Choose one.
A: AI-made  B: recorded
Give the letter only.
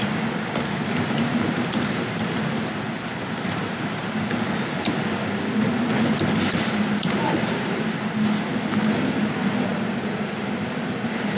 B